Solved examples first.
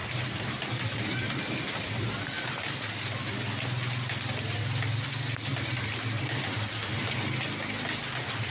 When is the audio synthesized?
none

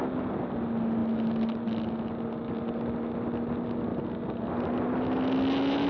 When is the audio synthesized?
none

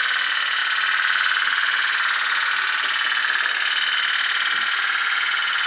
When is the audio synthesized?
5.0-5.7 (vocoder, Vocos)

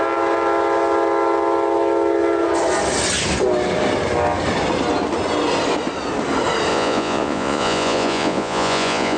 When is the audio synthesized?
6.7-9.2 (vocoder, Vocos)

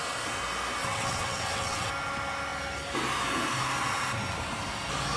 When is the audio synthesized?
0.8-1.9 (vocoder, WaveNeXt)

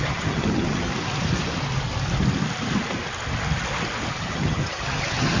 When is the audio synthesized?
0.0-0.9 (vocoder, HiFi-GAN); 4.1-5.4